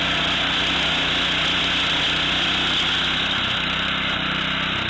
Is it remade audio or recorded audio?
recorded